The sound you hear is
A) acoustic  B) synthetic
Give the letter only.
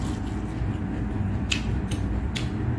A